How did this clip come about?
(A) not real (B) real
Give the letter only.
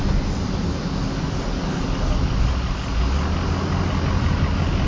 B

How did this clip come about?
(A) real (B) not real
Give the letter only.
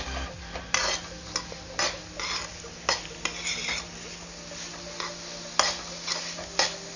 A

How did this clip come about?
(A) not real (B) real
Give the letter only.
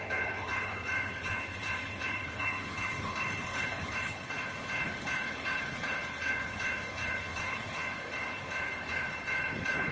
A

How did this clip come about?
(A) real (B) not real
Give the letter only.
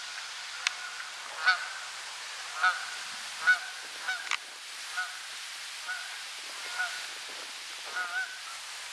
A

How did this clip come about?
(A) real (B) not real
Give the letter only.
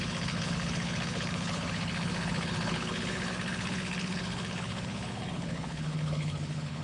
B